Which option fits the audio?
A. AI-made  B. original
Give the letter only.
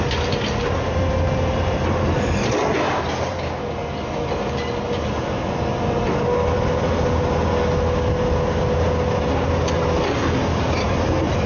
B